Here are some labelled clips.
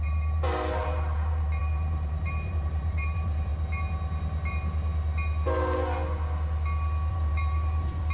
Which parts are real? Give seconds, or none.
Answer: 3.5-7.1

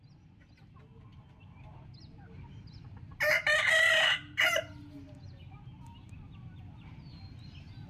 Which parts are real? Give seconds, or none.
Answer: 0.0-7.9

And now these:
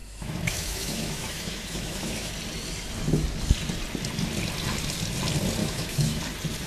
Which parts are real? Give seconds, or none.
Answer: 2.3-5.6; 6.2-6.7